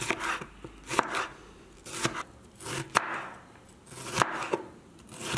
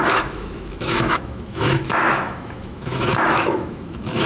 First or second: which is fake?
second